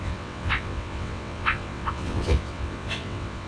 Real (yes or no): no